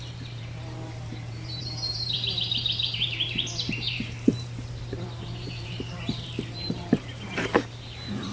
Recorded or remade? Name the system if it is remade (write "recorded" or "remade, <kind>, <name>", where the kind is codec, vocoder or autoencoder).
remade, vocoder, BigVGAN v2